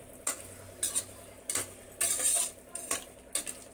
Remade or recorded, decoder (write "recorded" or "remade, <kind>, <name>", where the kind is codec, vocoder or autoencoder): recorded